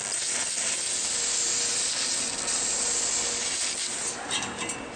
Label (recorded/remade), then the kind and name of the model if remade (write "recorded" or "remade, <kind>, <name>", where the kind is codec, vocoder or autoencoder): recorded